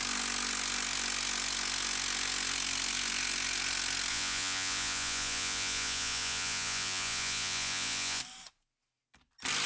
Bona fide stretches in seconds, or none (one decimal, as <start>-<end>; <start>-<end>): 0.0-4.1; 8.2-9.7